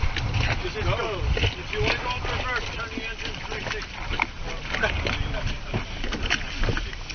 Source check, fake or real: real